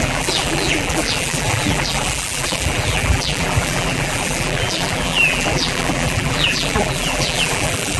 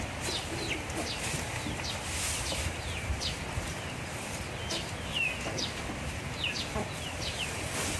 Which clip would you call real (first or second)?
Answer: second